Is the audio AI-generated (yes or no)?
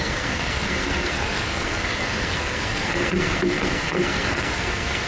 yes